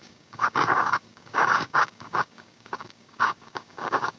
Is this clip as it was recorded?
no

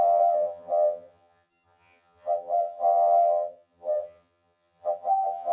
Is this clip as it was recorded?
no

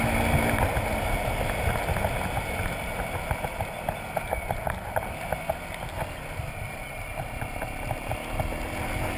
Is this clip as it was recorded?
yes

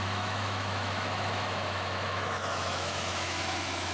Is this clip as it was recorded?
no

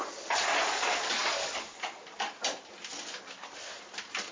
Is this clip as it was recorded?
yes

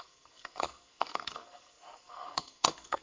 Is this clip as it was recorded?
no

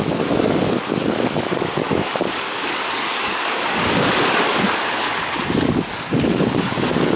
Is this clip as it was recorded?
no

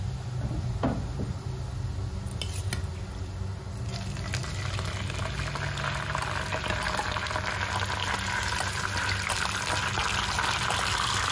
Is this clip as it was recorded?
yes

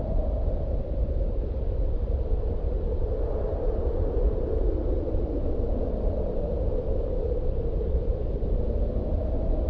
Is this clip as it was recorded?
yes